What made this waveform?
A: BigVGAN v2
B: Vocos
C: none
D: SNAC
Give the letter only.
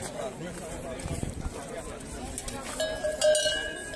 C